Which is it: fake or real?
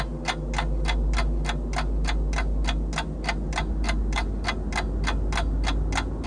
real